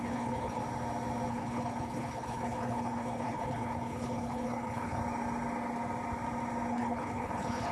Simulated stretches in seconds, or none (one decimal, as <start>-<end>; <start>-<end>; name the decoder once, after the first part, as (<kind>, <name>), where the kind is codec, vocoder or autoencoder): 0.0-0.6 (codec, HILCodec); 1.3-5.0; 6.7-7.7